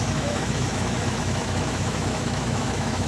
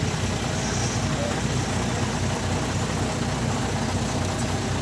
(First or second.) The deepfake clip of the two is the first